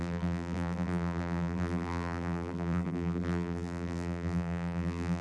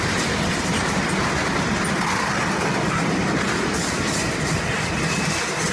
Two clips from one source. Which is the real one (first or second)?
second